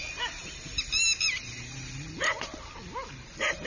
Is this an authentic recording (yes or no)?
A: yes